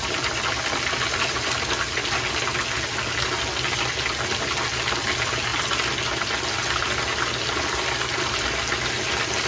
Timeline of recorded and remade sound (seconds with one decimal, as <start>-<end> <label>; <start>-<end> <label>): 0.0-9.5 recorded